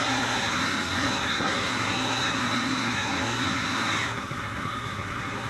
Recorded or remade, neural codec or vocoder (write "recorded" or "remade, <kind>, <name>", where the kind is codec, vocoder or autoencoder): remade, codec, SNAC